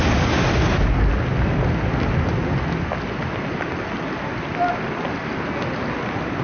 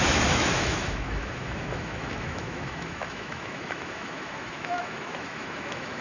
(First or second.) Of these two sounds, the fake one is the second